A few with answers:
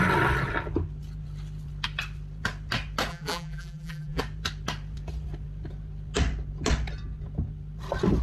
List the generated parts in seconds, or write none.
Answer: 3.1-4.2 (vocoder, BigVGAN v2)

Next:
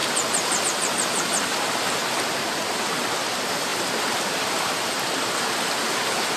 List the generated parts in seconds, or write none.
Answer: 0.0-2.0 (vocoder, BigVGAN v2); 2.7-6.4

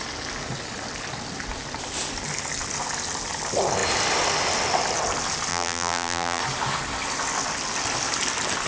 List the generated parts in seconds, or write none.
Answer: 5.5-6.4 (vocoder, BigVGAN v2)

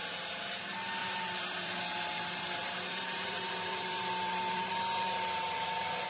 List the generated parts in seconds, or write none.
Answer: 1.0-4.7 (vocoder, BigVGAN v2)